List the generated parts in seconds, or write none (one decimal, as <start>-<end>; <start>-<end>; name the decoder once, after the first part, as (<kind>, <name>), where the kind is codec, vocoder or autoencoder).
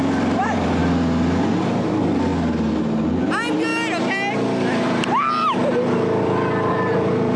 0.0-0.8 (vocoder, BigVGAN v2); 1.6-2.3; 3.2-3.7; 4.7-5.6; 6.2-7.4